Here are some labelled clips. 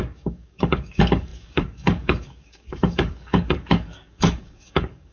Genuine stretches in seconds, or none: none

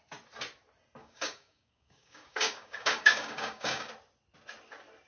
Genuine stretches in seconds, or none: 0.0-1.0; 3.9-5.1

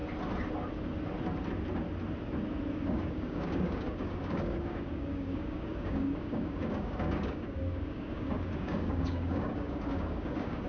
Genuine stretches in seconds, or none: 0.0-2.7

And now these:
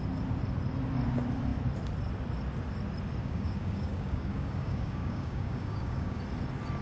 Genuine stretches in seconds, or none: 0.0-3.2; 6.2-6.8